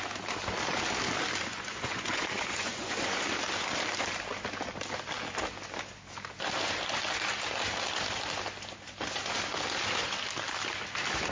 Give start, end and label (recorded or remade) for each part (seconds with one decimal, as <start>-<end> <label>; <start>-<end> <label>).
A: 0.0-1.5 recorded; 1.5-3.2 remade; 3.2-11.3 recorded